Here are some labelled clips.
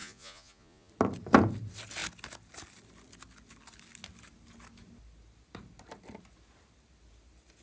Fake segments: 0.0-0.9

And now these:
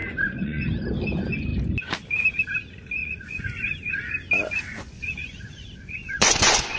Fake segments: 0.0-0.6; 3.0-4.0; 4.7-6.8

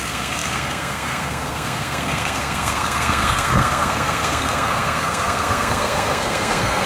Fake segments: 0.0-6.9

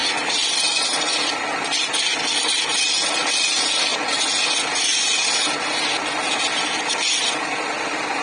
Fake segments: none

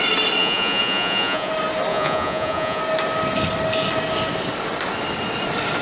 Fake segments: 0.4-1.5; 1.9-2.8

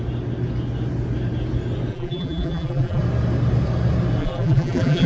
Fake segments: 1.9-3.0; 4.2-5.1

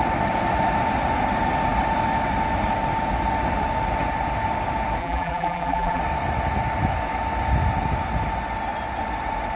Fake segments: 5.0-6.0

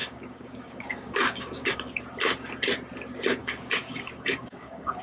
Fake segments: 0.0-2.0; 3.4-5.0